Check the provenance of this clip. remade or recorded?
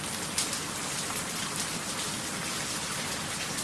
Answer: recorded